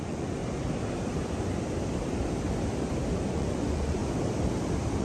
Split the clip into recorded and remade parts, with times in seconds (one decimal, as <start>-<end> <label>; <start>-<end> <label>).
0.0-0.4 remade; 0.4-3.3 recorded; 3.3-4.0 remade; 4.0-5.0 recorded